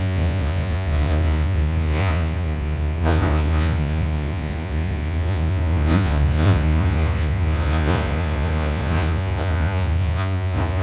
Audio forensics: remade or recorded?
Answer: remade